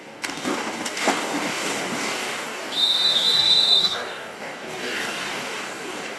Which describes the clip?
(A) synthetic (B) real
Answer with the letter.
A